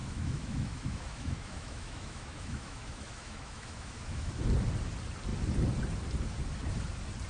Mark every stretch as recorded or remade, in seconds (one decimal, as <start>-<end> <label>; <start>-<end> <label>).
0.0-4.4 remade; 4.4-7.3 recorded